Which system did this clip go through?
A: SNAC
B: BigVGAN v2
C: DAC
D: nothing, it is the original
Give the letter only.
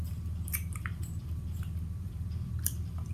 B